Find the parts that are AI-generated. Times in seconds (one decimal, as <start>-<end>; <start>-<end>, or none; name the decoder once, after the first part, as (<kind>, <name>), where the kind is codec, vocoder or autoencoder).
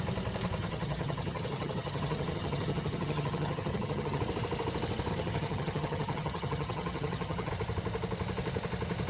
0.6-4.2 (vocoder, HiFi-GAN); 5.1-7.5